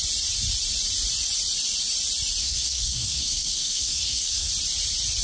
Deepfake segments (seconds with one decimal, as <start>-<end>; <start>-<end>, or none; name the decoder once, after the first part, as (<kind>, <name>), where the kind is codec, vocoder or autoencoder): 2.4-4.5 (codec, SNAC)